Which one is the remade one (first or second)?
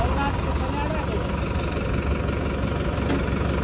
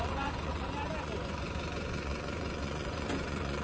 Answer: second